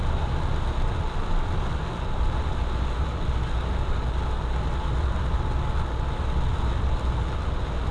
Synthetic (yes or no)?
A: no